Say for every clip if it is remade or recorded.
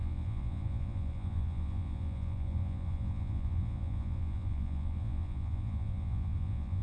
remade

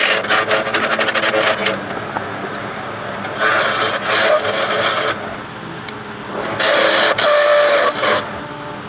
recorded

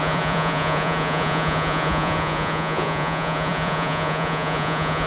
remade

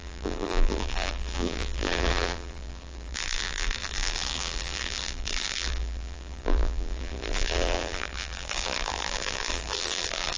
remade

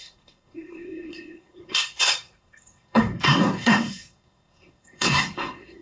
remade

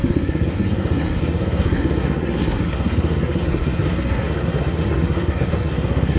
remade